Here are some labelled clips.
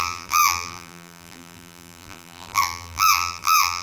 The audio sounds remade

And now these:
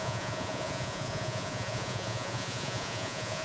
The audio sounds remade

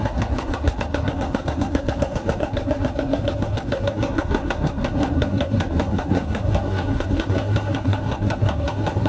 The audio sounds remade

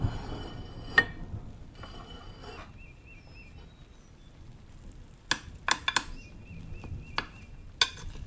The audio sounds recorded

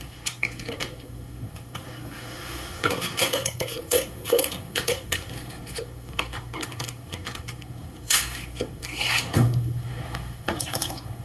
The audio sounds remade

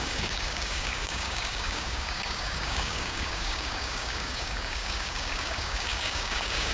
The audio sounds remade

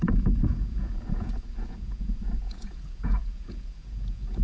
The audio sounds remade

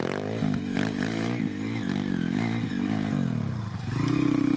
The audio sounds recorded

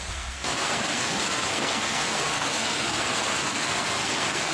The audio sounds remade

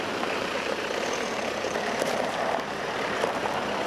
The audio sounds remade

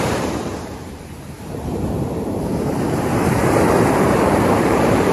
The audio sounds remade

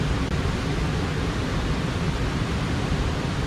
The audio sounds recorded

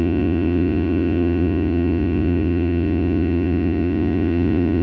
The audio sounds remade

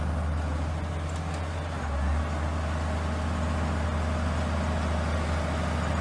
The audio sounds recorded